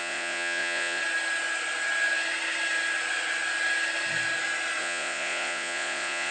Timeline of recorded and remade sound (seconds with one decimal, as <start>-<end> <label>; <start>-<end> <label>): 0.0-1.0 remade; 1.0-4.8 recorded; 4.8-6.3 remade